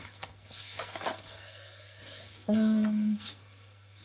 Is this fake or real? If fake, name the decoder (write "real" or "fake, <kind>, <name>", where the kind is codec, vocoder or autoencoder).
fake, codec, SNAC